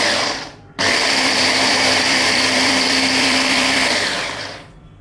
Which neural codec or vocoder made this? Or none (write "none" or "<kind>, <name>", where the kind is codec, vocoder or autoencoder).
vocoder, BigVGAN v2